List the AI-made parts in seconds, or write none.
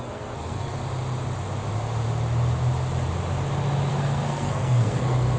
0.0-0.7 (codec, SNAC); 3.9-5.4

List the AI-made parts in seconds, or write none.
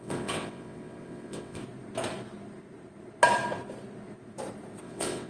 0.0-1.6 (vocoder, WaveNeXt); 4.8-5.3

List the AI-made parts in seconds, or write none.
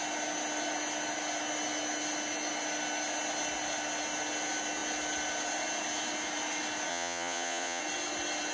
6.9-7.8 (vocoder, Vocos)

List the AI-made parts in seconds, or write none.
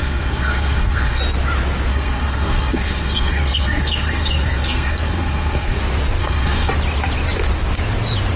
0.0-1.2 (codec, SNAC); 1.9-5.8; 6.2-6.7